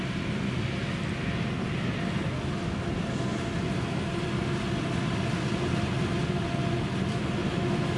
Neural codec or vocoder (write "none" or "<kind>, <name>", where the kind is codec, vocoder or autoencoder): none